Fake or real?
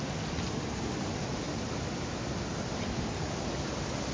real